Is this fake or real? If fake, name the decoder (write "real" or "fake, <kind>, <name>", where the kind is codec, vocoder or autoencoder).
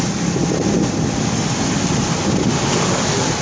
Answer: real